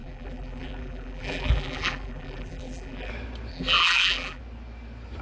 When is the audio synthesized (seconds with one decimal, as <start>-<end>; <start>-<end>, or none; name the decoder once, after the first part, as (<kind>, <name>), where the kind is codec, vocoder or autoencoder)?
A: 0.0-3.1 (vocoder, BigVGAN v2); 3.5-4.4